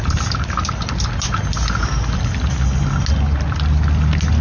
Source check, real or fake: real